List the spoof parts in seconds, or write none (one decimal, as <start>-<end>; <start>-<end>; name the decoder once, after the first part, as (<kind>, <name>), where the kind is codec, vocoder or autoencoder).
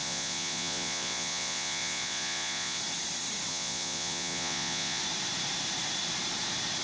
0.0-2.8 (vocoder, Vocos); 3.5-5.0